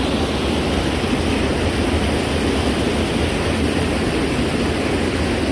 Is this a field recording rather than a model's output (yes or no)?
yes